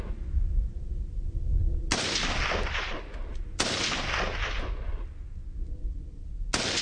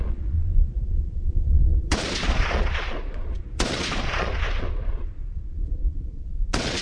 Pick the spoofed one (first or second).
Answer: second